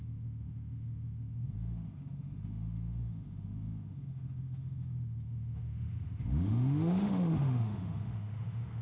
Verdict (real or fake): fake